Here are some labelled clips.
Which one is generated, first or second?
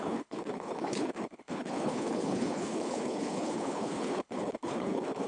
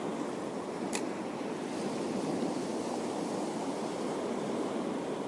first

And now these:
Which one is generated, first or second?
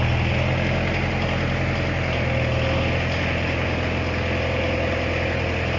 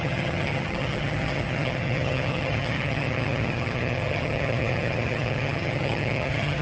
second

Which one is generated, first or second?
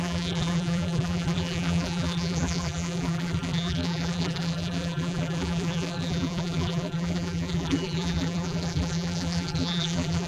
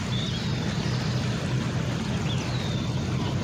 first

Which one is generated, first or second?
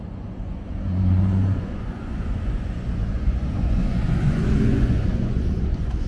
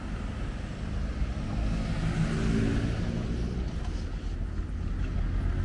first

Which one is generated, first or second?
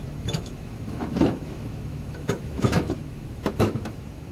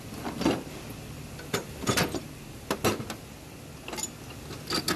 first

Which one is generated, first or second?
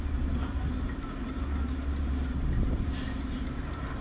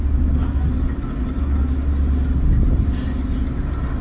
first